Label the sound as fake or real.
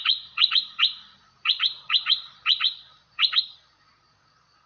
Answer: fake